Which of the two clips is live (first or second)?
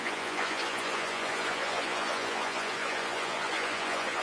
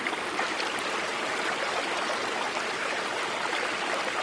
second